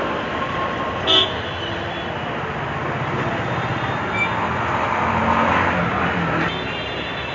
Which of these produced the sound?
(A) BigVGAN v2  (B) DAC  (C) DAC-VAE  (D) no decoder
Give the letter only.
D